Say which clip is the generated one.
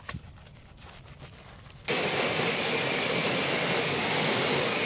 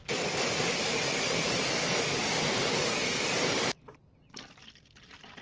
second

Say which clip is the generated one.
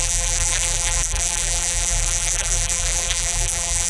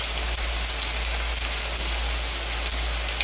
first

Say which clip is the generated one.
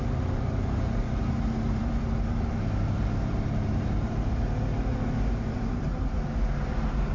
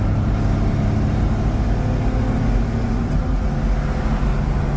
first